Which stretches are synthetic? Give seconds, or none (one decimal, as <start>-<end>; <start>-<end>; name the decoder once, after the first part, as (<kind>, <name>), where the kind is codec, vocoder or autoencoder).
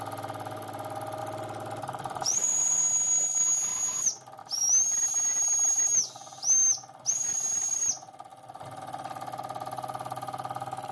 1.2-2.8 (vocoder, BigVGAN v2); 8.3-8.8